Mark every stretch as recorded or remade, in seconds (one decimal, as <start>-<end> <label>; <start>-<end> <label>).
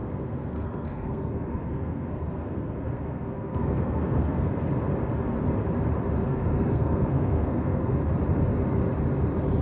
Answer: 0.0-4.5 remade; 4.5-6.2 recorded; 6.2-7.9 remade; 7.9-9.6 recorded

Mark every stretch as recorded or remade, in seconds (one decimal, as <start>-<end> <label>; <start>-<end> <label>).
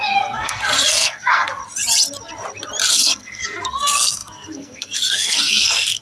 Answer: 0.0-1.6 remade; 1.6-2.9 recorded; 2.9-6.0 remade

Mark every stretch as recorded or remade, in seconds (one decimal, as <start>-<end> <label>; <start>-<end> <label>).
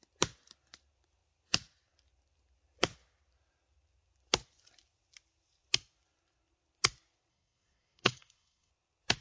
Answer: 0.0-7.3 recorded; 7.3-8.7 remade; 8.7-9.2 recorded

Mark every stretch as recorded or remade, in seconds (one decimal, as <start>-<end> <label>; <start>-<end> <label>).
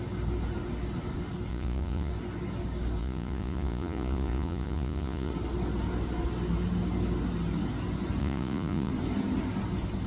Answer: 0.0-1.5 recorded; 1.5-2.1 remade; 2.1-3.0 recorded; 3.0-5.3 remade; 5.3-8.2 recorded; 8.2-8.9 remade; 8.9-10.1 recorded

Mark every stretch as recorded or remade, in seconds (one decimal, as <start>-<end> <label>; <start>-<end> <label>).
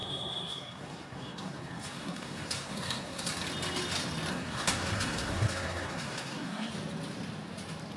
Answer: 0.0-3.3 remade; 3.3-4.3 recorded; 4.3-6.7 remade; 6.7-8.0 recorded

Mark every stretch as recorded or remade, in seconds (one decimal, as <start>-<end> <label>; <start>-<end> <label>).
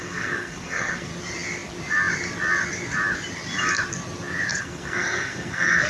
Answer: 0.0-1.1 remade; 1.1-4.6 recorded; 4.6-5.9 remade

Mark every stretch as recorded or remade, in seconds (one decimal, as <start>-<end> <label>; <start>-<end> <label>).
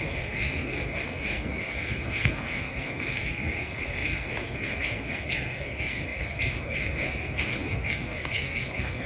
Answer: 0.0-9.1 remade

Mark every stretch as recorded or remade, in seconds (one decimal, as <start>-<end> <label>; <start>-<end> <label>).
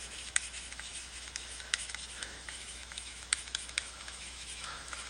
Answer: 0.0-5.1 remade